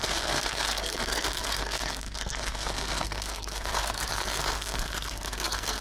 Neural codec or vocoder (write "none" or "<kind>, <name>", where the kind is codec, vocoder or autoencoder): codec, SNAC